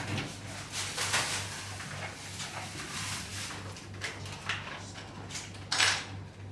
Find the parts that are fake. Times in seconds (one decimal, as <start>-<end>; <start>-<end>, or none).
none